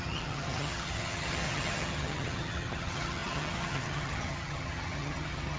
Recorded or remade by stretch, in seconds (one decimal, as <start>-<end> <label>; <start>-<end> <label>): 0.0-5.6 remade